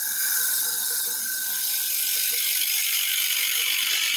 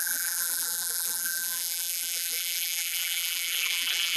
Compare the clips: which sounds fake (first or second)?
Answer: second